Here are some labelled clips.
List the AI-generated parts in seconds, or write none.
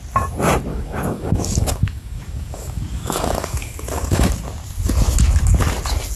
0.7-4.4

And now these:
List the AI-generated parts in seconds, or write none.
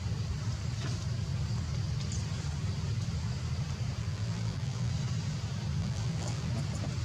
4.0-4.9; 5.8-6.5